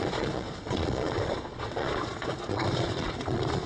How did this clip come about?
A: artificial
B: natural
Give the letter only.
A